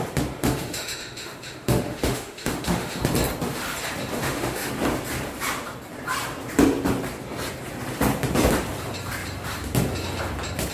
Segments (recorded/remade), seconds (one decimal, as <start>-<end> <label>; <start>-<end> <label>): 0.0-0.4 recorded; 0.4-3.0 remade; 3.0-4.1 recorded; 4.1-4.7 remade; 4.7-10.7 recorded

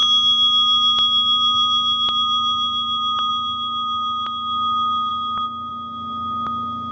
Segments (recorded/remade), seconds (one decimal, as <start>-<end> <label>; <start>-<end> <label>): 0.0-6.9 recorded

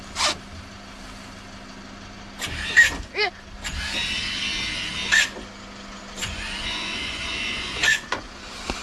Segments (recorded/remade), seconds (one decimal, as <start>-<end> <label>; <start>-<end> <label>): 0.0-6.2 recorded; 6.2-8.3 remade; 8.3-8.8 recorded

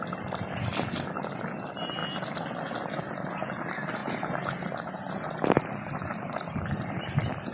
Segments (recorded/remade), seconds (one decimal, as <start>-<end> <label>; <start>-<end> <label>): 0.0-4.0 recorded; 4.0-6.6 remade; 6.6-7.5 recorded